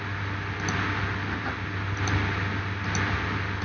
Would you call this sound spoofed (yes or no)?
no